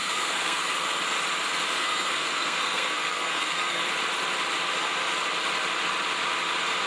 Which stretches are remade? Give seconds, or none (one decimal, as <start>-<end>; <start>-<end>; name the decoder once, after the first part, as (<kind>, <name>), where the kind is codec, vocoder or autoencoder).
0.0-0.6 (codec, SNAC); 1.8-3.9